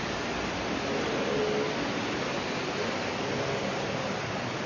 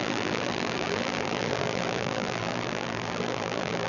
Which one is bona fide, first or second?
first